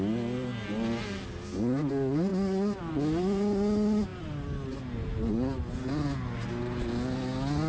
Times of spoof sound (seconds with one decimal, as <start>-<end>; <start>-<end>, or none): none